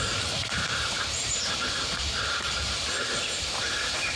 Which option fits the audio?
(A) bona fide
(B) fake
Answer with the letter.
B